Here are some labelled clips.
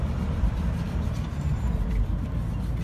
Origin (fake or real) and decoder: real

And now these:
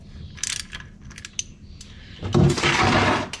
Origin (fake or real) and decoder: real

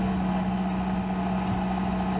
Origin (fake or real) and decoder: real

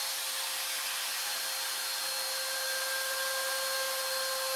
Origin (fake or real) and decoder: real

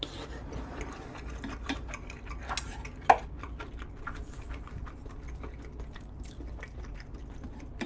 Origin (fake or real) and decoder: real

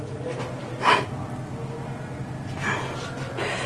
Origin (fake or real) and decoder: real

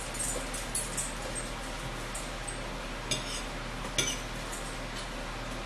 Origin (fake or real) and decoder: real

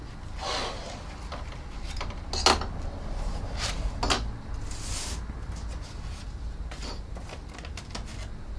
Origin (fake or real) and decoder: real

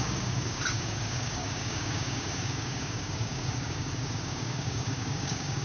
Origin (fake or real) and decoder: fake, codec, DAC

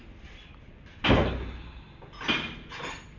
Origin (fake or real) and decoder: real